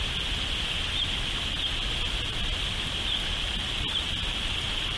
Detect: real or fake real